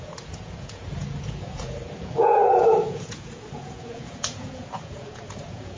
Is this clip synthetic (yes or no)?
yes